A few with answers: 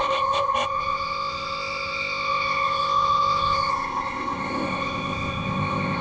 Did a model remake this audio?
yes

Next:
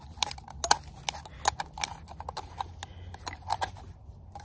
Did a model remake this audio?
no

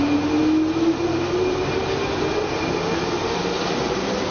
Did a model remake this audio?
no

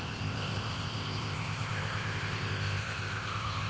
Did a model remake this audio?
yes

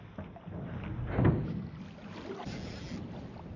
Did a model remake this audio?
no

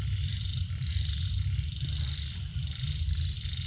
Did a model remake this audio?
no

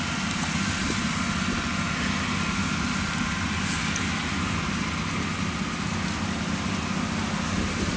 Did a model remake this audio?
no